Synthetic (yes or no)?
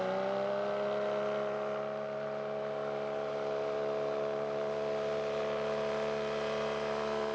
no